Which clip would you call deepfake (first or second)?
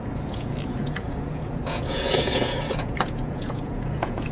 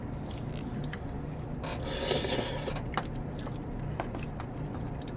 first